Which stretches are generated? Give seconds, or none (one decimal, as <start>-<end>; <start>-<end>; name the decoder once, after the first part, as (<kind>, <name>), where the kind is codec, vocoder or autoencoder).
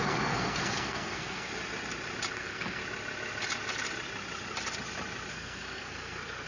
0.0-1.5 (codec, SNAC); 2.3-2.8; 5.3-6.5